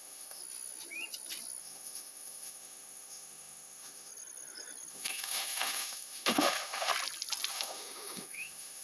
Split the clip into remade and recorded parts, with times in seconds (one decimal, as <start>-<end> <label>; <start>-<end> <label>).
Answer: 0.0-0.4 remade; 0.4-1.6 recorded; 1.6-4.1 remade; 4.1-4.9 recorded; 4.9-6.9 remade; 6.9-7.5 recorded; 7.5-8.8 remade